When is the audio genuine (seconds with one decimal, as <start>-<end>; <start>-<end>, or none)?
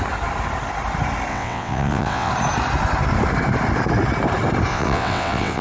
0.0-1.3; 2.3-4.7